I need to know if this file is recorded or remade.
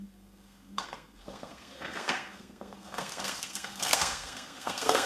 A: remade